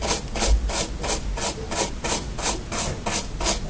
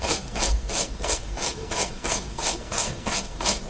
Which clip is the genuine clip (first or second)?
first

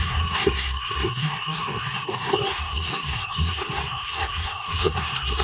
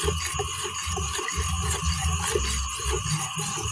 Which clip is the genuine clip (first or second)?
second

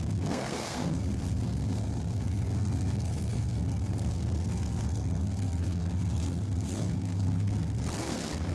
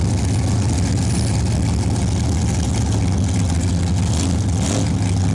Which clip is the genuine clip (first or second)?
second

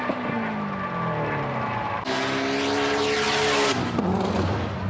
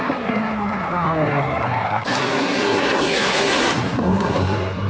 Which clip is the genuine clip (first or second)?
first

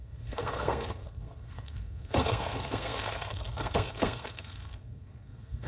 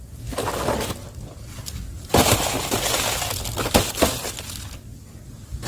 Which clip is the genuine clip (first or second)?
second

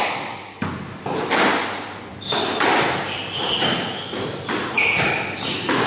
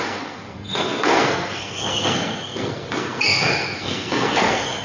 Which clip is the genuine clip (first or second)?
first